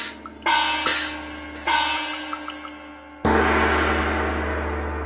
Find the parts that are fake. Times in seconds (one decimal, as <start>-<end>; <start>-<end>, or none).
none